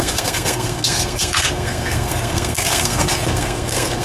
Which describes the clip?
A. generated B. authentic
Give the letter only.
A